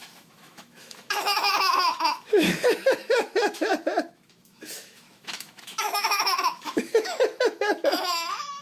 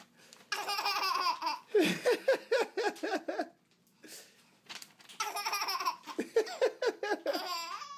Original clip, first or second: second